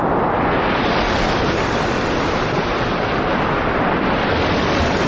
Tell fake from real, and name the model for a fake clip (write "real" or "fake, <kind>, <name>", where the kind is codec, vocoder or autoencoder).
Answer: real